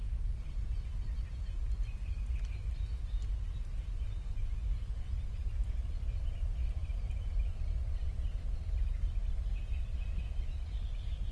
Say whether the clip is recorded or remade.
recorded